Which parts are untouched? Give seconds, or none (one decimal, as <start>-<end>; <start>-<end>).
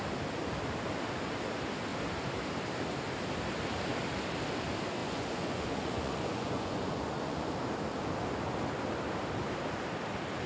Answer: 0.0-5.0; 7.5-10.5